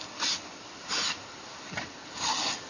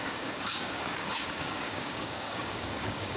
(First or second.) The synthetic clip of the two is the second